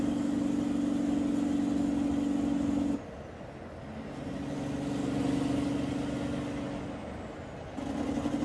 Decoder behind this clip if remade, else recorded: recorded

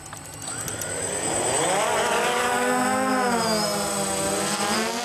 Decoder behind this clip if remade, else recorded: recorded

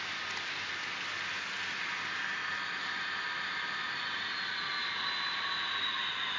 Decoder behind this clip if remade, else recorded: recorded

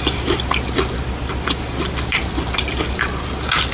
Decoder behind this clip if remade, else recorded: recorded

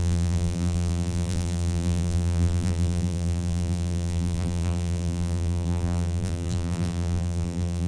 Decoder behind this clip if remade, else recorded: remade, vocoder, BigVGAN v2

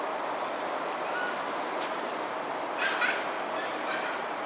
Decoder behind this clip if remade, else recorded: recorded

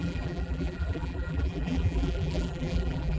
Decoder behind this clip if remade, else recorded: remade, vocoder, BigVGAN v2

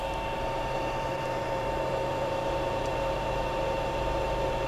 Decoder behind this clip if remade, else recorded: remade, vocoder, BigVGAN v2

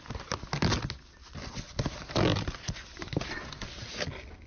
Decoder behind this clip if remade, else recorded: recorded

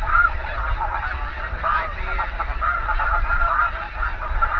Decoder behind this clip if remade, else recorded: remade, vocoder, BigVGAN v2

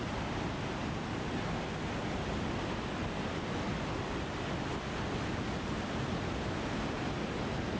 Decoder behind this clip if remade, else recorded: recorded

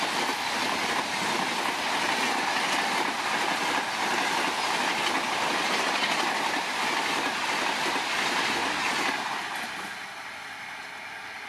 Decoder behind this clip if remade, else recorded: recorded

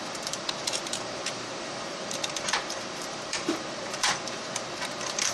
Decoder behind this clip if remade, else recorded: remade, vocoder, BigVGAN v2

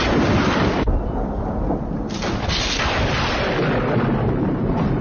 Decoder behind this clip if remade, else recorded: remade, vocoder, BigVGAN v2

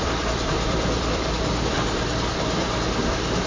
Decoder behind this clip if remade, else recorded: remade, vocoder, BigVGAN v2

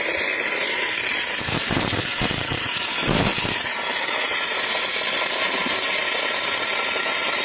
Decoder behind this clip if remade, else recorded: remade, vocoder, BigVGAN v2